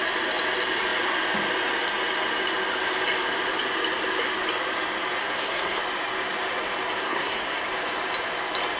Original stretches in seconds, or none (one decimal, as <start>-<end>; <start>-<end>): 0.0-5.2; 5.8-7.0; 7.6-8.8